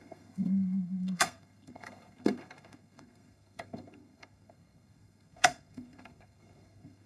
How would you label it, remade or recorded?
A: remade